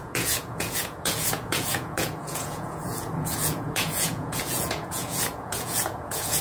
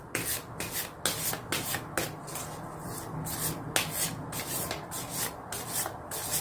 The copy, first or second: first